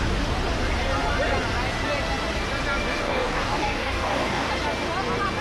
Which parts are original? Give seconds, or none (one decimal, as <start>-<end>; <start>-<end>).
0.0-3.0; 4.5-5.4